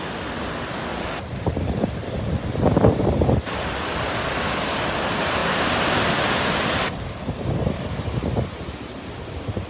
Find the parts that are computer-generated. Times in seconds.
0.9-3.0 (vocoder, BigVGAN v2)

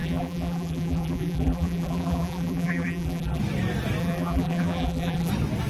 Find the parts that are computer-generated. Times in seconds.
0.0-3.4 (vocoder, BigVGAN v2); 4.0-5.3